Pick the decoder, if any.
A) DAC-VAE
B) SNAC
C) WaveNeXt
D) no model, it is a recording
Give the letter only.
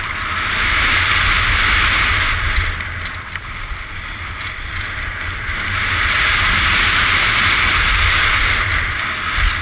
D